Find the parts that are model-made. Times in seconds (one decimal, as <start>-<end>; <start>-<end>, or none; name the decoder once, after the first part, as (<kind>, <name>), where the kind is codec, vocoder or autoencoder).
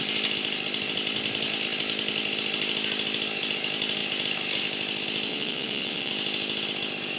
5.3-6.1 (vocoder, Vocos)